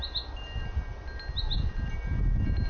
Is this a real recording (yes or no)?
yes